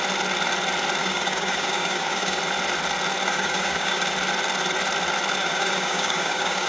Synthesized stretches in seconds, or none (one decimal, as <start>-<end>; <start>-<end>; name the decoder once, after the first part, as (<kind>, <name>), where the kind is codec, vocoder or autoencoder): 1.0-2.4 (codec, DAC); 3.3-4.0; 5.4-6.7